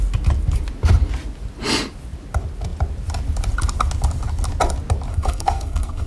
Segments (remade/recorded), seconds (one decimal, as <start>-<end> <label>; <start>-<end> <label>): 0.0-5.1 recorded; 5.1-6.1 remade